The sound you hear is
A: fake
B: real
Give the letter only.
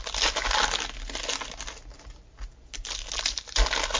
B